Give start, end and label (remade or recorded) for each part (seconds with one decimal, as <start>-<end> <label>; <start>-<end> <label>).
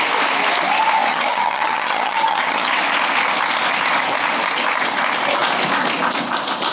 0.0-1.1 recorded; 1.1-2.7 remade; 2.7-6.7 recorded